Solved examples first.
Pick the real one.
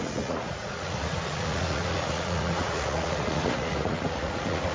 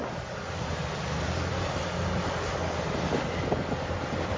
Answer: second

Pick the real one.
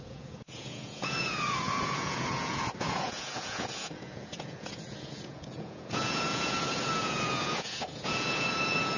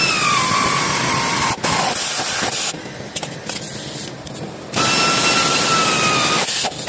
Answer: second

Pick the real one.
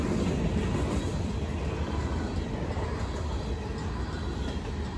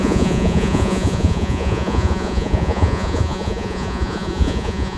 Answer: first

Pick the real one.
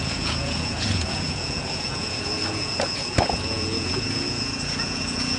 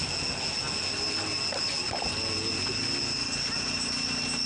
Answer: second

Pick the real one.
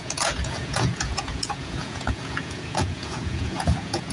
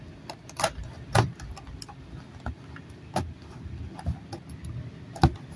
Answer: second